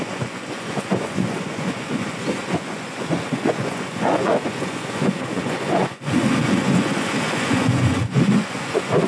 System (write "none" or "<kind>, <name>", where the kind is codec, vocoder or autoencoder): vocoder, Vocos